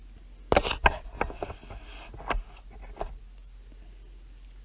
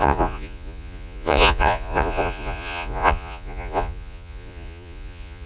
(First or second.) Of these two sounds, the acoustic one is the first